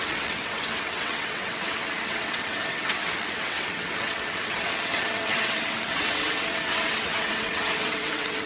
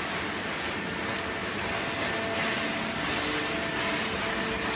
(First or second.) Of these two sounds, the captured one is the second